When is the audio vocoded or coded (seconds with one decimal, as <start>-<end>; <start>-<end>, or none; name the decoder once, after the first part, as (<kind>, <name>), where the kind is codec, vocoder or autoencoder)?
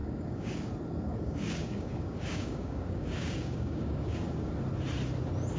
0.0-0.7 (codec, DAC); 1.1-4.5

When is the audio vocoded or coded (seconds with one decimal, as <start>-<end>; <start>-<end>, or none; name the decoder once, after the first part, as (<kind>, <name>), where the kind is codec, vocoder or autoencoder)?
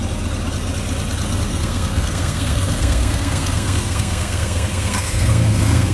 1.5-5.9 (codec, SNAC)